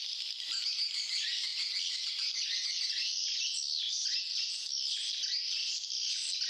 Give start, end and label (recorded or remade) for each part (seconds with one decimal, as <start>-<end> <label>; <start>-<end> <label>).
0.0-6.5 recorded